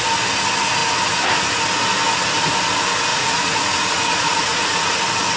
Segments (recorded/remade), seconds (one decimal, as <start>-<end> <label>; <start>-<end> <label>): 0.0-3.1 recorded; 3.1-5.0 remade; 5.0-5.4 recorded